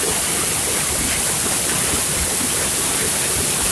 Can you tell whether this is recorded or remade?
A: recorded